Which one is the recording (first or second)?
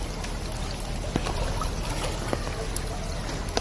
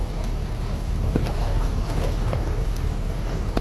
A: first